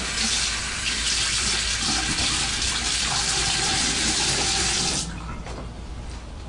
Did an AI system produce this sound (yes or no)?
yes